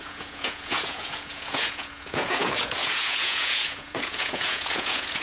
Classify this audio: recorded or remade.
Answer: remade